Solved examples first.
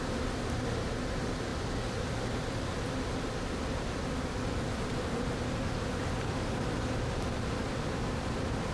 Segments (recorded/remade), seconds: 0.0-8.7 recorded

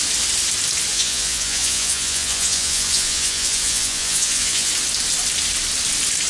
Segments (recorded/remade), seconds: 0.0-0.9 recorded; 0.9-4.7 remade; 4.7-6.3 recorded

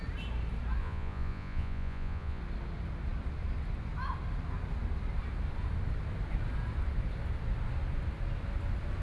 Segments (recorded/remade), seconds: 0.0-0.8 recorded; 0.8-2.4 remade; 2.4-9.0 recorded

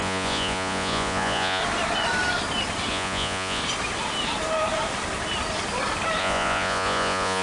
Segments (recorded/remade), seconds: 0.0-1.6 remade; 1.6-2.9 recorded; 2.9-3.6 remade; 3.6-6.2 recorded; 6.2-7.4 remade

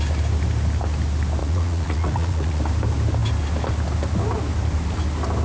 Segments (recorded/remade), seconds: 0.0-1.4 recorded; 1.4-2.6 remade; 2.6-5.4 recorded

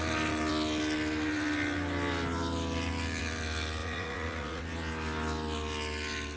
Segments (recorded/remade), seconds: 0.0-3.8 recorded; 3.8-4.6 remade; 4.6-6.4 recorded

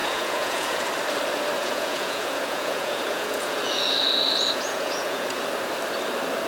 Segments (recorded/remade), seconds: 0.0-0.9 remade; 0.9-1.6 recorded; 1.6-5.4 remade; 5.4-6.5 recorded